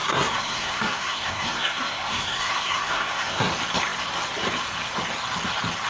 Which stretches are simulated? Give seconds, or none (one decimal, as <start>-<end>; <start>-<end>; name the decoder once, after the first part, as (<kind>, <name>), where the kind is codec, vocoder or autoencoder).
0.0-3.5 (codec, SNAC)